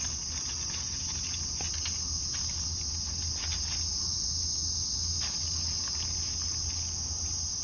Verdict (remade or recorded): recorded